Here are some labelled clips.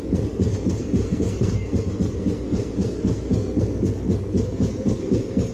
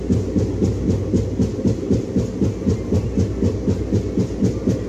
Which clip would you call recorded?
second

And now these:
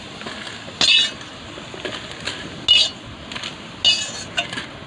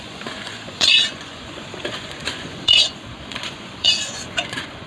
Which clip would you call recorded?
first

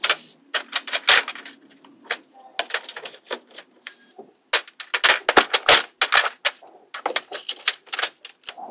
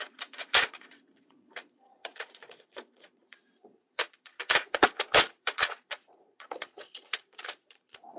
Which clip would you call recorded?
first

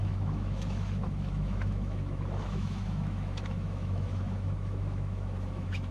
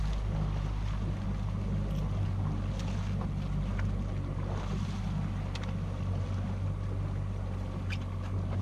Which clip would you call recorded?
second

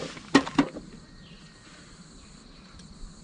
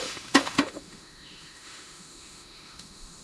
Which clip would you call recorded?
first